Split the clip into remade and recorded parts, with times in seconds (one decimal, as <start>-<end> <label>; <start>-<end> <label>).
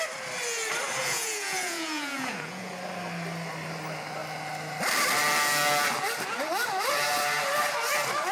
0.0-1.0 recorded; 1.0-2.7 remade; 2.7-8.3 recorded